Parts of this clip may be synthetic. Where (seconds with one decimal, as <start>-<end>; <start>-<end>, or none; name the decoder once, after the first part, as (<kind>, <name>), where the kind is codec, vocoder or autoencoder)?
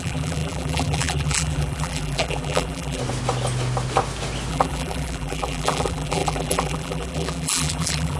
0.0-3.0 (vocoder, BigVGAN v2); 4.5-8.2